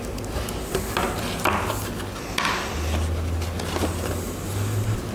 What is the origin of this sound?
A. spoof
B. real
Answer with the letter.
B